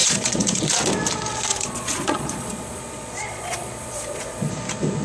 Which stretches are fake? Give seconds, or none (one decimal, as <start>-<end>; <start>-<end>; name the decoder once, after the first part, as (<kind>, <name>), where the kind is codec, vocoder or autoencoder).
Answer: 0.0-0.6 (vocoder, Vocos); 1.5-4.5